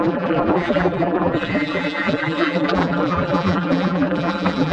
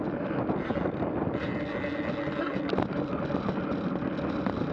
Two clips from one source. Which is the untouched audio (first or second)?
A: second